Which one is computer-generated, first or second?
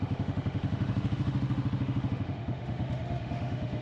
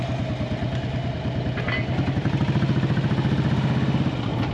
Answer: first